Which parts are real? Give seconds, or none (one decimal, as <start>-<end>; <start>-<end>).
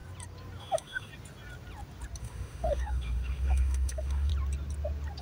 0.0-0.6; 1.1-2.2; 4.3-5.2